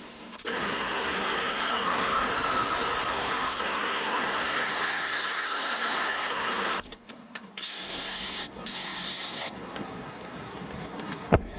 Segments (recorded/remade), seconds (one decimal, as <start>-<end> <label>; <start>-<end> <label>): 0.0-2.3 remade; 2.3-3.1 recorded; 3.1-11.6 remade